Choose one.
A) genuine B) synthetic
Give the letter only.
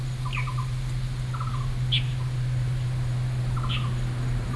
A